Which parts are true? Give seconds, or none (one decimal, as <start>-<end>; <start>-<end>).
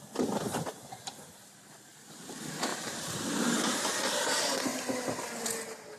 0.0-2.7; 3.9-6.0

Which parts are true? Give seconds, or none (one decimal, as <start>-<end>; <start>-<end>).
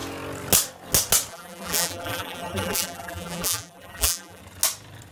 0.0-1.3; 4.4-5.1